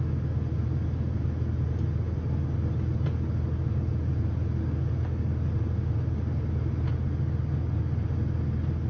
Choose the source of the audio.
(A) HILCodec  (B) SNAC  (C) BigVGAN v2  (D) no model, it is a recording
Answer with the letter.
D